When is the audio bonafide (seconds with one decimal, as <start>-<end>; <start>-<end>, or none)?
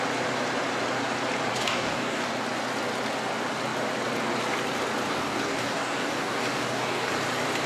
0.0-1.5; 2.3-5.1; 7.1-7.7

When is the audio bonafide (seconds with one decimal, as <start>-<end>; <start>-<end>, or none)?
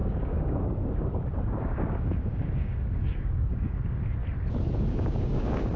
4.2-4.8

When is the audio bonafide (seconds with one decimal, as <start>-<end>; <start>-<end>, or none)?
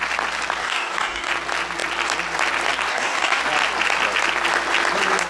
0.0-0.6; 1.3-2.9; 3.4-5.3